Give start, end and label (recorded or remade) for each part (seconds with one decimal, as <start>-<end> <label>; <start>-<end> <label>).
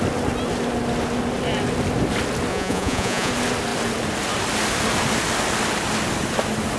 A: 0.0-2.5 recorded; 2.5-3.3 remade; 3.3-6.8 recorded